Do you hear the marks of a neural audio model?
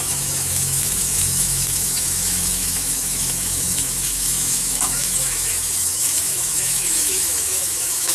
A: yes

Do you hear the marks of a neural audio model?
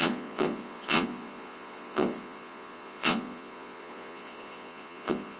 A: yes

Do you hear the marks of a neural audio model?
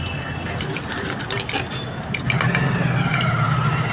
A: no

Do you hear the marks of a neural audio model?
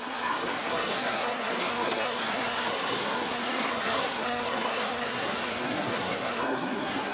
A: yes